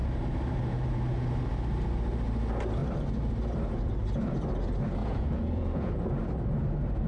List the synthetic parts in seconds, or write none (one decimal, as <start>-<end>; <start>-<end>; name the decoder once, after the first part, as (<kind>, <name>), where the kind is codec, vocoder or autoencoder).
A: 5.0-5.9 (vocoder, Vocos)